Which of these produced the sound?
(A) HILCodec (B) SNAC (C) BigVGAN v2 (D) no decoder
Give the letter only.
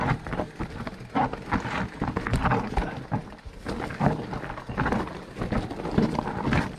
D